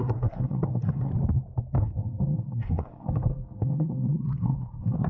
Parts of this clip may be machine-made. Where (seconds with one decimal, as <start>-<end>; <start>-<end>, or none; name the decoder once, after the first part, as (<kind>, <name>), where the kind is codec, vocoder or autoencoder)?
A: 0.0-1.1 (codec, SNAC); 1.8-5.1